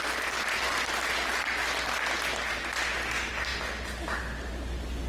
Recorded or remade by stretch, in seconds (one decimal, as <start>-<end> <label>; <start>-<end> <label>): 0.0-5.1 recorded